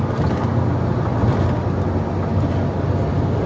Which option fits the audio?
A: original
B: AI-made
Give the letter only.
A